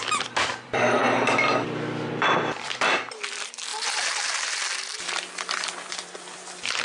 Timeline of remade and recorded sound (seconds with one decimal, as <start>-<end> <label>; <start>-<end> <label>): 0.0-1.0 remade; 1.0-2.1 recorded; 2.1-6.8 remade